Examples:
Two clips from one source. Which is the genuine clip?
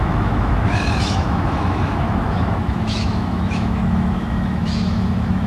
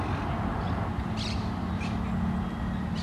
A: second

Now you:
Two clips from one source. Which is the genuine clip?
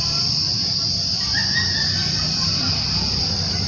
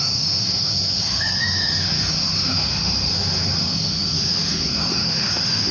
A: first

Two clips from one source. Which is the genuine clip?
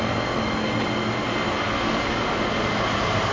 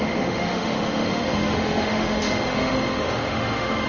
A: first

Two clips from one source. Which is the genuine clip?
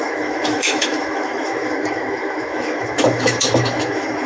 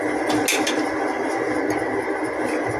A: second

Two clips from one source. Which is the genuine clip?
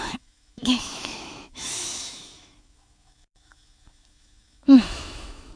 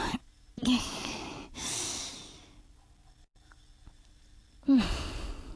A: second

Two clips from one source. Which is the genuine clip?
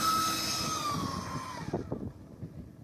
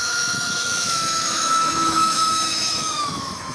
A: first